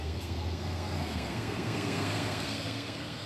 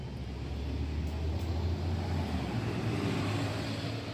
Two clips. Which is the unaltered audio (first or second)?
second